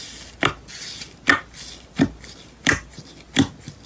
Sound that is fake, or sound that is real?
real